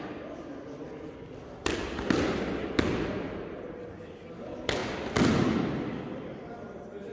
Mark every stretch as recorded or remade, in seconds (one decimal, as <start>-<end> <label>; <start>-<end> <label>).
0.0-7.1 recorded